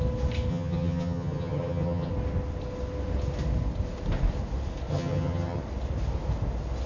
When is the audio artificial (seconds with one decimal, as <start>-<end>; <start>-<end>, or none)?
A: 0.5-2.1; 4.9-5.6